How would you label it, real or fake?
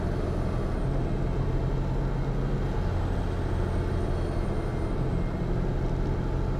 real